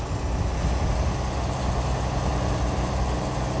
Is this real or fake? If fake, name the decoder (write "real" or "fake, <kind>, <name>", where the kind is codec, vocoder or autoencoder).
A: real